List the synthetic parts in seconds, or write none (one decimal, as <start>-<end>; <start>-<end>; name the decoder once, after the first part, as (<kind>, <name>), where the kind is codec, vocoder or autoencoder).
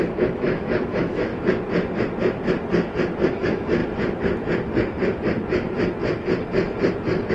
0.0-1.3 (autoencoder, DAC-VAE); 3.3-3.8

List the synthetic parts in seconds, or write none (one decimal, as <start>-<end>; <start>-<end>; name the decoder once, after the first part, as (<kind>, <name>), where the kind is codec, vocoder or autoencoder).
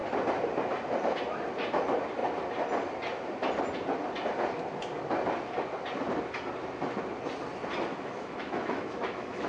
7.9-9.5 (autoencoder, DAC-VAE)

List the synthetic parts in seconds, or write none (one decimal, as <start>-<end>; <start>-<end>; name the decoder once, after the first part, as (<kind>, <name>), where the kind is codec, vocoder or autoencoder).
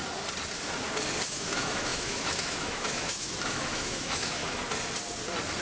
1.3-4.4 (autoencoder, DAC-VAE)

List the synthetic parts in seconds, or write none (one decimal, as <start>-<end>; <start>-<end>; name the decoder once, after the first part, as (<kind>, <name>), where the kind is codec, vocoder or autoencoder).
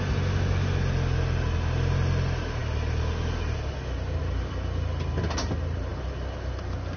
none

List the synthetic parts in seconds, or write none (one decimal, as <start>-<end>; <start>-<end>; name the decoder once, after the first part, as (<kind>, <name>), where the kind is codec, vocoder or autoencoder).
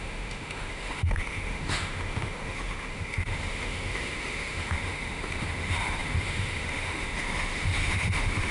0.0-8.5 (autoencoder, DAC-VAE)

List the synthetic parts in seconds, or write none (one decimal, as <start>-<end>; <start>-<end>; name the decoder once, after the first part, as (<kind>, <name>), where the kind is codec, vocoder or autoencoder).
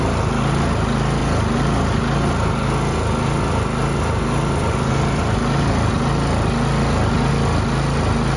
none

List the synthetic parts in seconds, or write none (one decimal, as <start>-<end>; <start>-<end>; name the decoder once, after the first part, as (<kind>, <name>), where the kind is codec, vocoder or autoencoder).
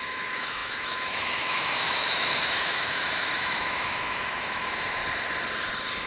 0.0-5.0 (autoencoder, DAC-VAE)